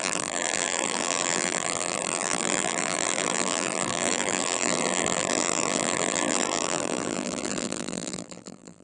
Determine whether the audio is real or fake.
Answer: fake